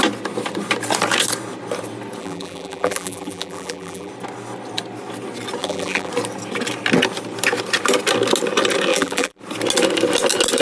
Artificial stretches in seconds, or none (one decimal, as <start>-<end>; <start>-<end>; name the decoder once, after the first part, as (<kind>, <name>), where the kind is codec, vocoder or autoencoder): 2.2-4.1 (vocoder, BigVGAN v2); 5.6-6.1; 8.9-9.4